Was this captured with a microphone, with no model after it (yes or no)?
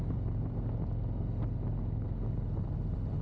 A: yes